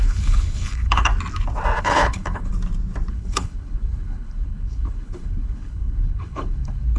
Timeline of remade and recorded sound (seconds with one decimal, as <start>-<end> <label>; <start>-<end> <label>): 0.0-1.1 remade; 1.1-1.8 recorded; 1.8-2.5 remade; 2.5-3.1 recorded; 3.1-7.0 remade